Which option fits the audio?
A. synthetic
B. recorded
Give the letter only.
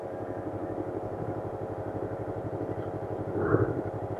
A